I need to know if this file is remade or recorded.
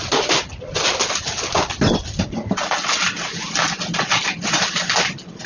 recorded